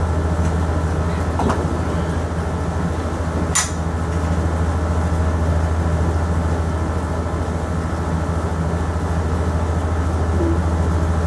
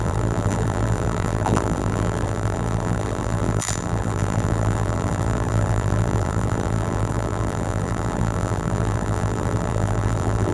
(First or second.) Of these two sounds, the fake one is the second